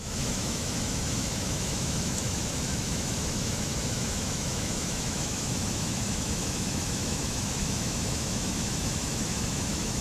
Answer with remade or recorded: remade